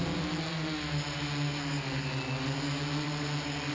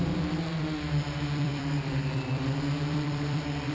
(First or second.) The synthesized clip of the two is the second